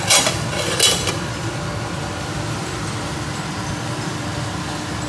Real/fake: real